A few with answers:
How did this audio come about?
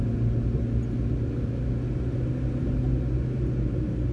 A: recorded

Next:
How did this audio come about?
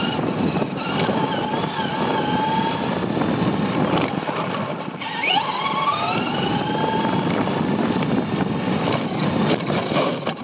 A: recorded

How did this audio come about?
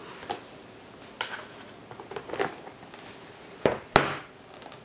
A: recorded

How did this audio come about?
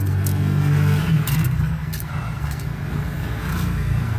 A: remade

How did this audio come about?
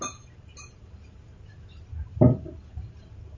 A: recorded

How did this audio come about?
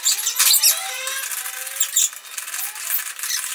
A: recorded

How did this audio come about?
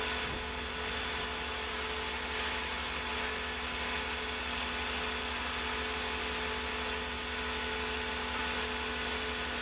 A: recorded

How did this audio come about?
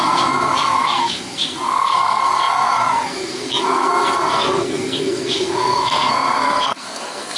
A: remade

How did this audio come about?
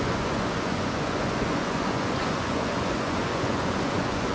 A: remade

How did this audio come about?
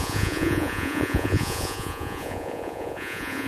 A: remade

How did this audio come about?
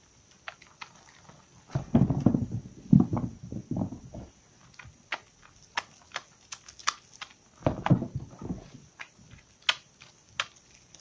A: recorded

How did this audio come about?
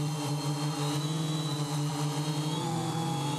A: remade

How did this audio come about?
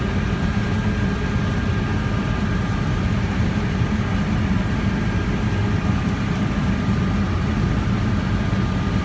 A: recorded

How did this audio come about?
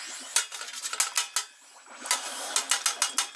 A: recorded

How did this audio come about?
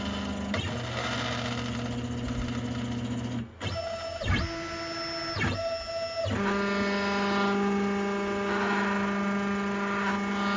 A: recorded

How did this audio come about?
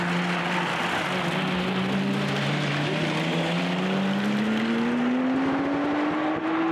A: recorded